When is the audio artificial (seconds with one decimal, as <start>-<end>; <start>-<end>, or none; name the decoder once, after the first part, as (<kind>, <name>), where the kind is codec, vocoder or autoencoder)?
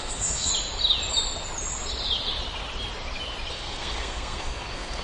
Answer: 0.0-0.5 (codec, SNAC); 3.5-5.0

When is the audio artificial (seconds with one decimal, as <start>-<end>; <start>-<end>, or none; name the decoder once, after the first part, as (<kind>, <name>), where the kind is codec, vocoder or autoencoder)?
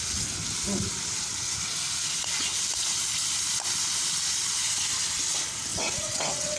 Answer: 5.7-6.6 (vocoder, WaveNeXt)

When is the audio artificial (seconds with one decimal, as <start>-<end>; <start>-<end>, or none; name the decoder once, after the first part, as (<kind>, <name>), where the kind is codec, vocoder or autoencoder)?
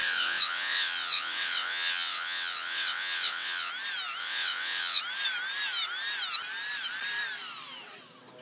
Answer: 0.0-3.7 (vocoder, WaveNeXt); 4.2-5.0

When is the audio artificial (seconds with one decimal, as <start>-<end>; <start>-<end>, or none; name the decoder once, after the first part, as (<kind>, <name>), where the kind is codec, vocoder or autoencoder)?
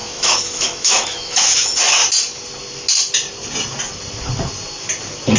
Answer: 0.0-2.0 (autoencoder, DAC-VAE)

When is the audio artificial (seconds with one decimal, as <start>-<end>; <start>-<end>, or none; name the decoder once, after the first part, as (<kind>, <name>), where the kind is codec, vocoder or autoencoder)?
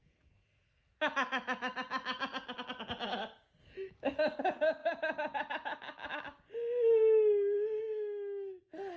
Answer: 0.0-1.7 (autoencoder, DAC-VAE); 3.6-4.2; 7.8-9.0